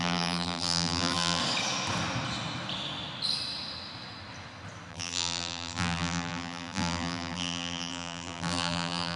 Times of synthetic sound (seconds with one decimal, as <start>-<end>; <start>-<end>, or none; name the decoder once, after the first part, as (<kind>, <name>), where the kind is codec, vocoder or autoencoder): 0.0-1.4 (vocoder, BigVGAN v2); 4.9-9.2